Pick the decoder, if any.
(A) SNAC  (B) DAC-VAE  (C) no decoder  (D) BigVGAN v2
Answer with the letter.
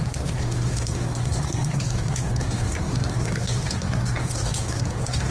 A